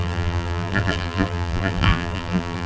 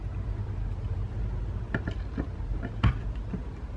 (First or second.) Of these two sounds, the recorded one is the second